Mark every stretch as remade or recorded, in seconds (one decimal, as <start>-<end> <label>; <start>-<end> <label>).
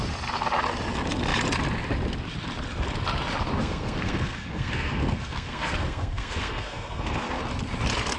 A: 0.0-3.6 recorded; 3.6-7.4 remade; 7.4-8.2 recorded